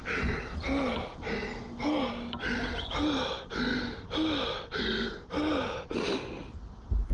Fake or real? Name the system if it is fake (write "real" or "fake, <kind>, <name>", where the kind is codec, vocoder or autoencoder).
real